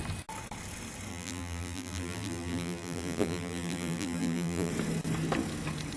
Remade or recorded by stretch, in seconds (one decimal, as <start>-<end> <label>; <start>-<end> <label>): 0.0-1.1 recorded; 1.1-4.7 remade; 4.7-6.0 recorded

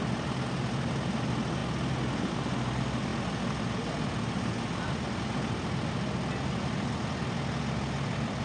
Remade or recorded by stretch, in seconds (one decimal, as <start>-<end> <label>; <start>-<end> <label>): 0.0-8.4 recorded

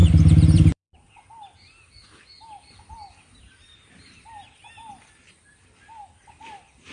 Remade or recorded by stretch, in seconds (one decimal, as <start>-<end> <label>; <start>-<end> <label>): 0.0-6.9 remade

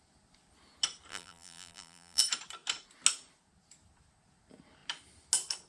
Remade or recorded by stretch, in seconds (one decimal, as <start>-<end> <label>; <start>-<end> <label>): 0.0-1.1 recorded; 1.1-2.2 remade; 2.2-5.7 recorded